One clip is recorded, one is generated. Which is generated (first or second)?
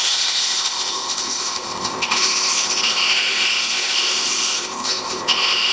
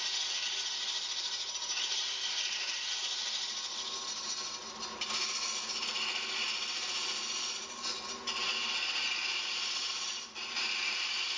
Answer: first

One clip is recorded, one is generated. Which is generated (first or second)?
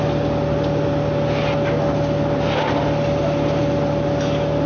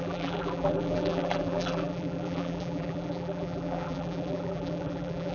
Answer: second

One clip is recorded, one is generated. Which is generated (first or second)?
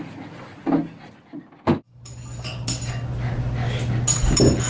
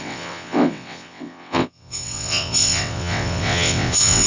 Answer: second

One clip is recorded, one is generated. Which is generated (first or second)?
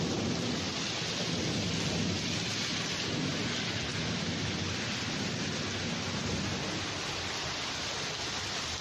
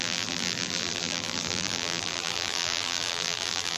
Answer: second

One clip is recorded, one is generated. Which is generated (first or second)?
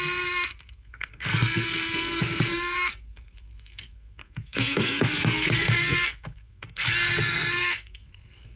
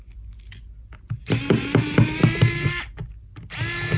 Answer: first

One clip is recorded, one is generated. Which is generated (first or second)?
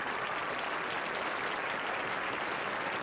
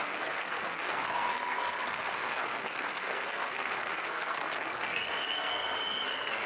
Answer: second